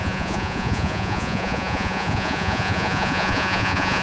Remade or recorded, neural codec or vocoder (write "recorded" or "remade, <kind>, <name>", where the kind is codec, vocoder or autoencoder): remade, vocoder, Vocos